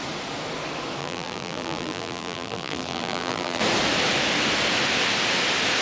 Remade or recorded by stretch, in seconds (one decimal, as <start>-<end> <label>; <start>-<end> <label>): 0.0-1.0 recorded; 1.0-3.6 remade; 3.6-5.8 recorded